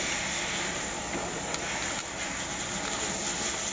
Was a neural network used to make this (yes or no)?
no